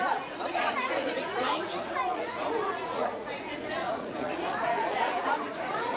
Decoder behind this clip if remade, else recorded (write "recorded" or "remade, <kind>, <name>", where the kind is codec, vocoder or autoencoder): remade, vocoder, Vocos